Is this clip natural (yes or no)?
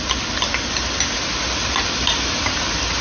yes